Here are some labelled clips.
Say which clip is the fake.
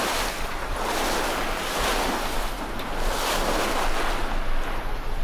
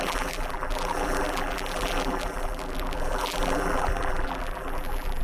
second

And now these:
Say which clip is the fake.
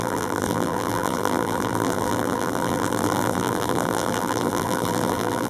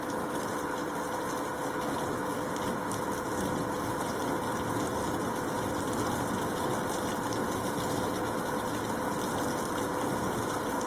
first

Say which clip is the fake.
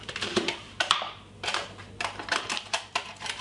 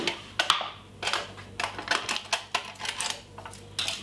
first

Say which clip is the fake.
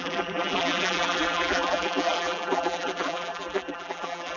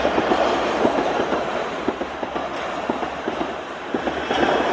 first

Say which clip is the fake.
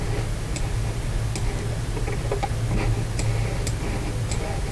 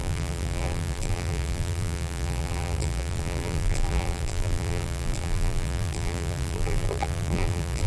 second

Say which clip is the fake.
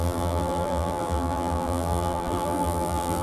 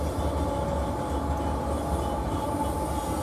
first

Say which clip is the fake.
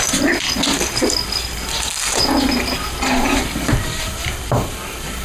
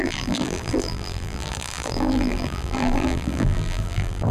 second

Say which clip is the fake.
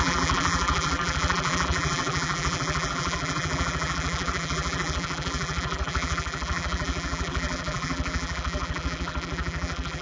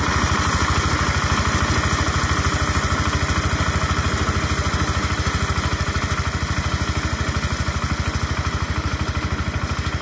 first